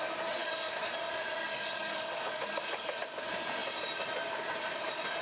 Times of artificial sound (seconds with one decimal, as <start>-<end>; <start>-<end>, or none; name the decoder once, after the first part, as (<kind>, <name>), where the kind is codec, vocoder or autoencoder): 0.4-0.9 (codec, DAC); 1.5-3.0